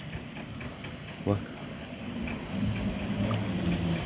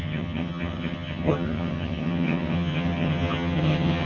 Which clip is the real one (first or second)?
first